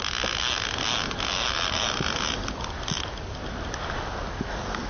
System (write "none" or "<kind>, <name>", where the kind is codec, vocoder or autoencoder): none